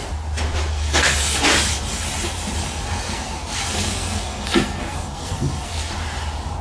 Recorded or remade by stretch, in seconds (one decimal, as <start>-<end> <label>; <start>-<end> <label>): 0.0-0.7 recorded; 0.7-1.4 remade; 1.4-2.6 recorded; 2.6-5.9 remade; 5.9-6.6 recorded

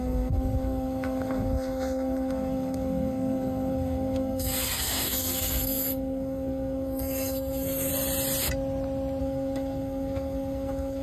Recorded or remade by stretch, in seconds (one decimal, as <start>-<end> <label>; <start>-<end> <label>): 0.0-7.9 remade; 7.9-9.2 recorded; 9.2-11.0 remade

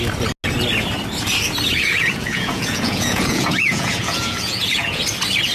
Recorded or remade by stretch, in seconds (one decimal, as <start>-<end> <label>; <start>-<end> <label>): 0.0-1.7 recorded; 1.7-5.0 remade; 5.0-5.5 recorded